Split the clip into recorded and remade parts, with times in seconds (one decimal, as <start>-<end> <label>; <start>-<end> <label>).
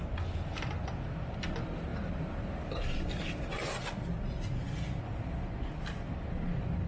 0.0-6.9 recorded